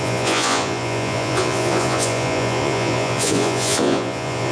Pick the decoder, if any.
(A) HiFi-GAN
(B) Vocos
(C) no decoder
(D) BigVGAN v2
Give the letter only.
B